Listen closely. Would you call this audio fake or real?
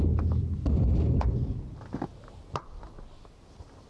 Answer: real